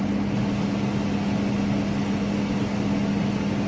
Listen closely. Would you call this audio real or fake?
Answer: real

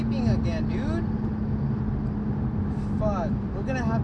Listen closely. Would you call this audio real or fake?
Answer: real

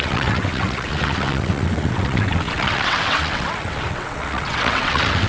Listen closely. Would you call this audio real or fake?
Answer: fake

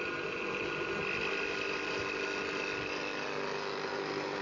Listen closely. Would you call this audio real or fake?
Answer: real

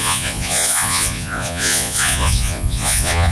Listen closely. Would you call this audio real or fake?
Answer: fake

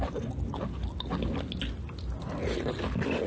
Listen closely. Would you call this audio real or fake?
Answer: real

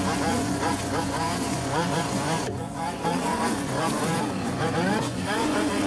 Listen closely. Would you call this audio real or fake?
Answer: fake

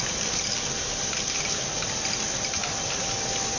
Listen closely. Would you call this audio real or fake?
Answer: real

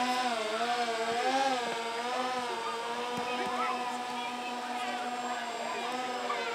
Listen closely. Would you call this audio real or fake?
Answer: real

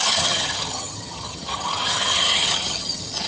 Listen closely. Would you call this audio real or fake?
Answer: fake